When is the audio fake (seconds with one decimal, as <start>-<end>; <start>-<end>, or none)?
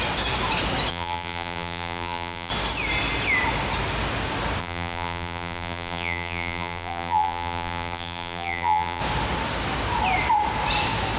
0.9-2.5; 4.6-9.0